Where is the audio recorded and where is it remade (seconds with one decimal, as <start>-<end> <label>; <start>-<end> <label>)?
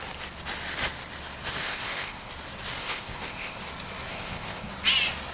0.0-1.6 recorded; 1.6-2.3 remade; 2.3-2.8 recorded; 2.8-3.6 remade; 3.6-4.1 recorded; 4.1-4.7 remade; 4.7-5.3 recorded